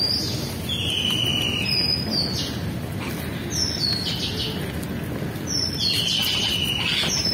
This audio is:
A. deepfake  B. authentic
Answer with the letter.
B